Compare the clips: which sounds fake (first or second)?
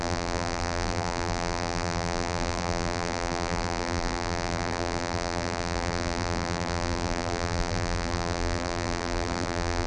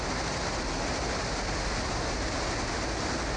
first